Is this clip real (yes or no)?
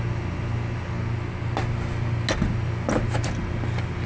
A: yes